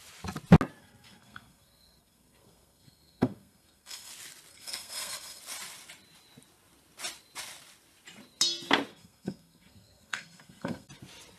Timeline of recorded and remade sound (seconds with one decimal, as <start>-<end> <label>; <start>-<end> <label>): 0.0-0.8 recorded; 0.8-4.1 remade; 4.1-4.5 recorded; 4.5-5.4 remade; 5.4-8.9 recorded; 8.9-10.9 remade; 10.9-11.4 recorded

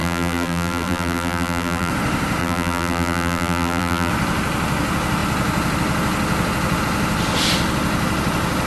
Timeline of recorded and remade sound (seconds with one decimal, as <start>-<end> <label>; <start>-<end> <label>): 0.0-1.9 remade; 1.9-2.4 recorded; 2.4-4.1 remade; 4.1-8.7 recorded